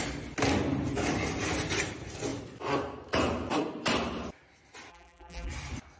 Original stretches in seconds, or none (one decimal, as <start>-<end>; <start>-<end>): 0.0-4.9; 5.5-6.0